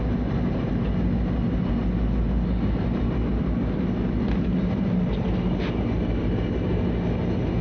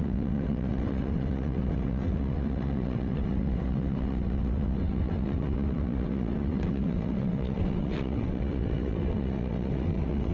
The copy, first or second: second